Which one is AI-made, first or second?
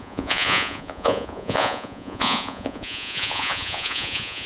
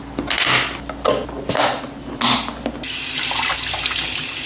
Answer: first